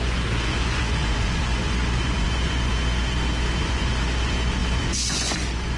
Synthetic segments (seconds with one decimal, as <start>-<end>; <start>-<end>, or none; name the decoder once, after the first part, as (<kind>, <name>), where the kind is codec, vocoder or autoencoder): 0.0-2.7 (vocoder, Vocos); 3.6-5.8